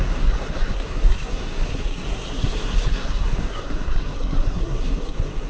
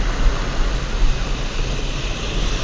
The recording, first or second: second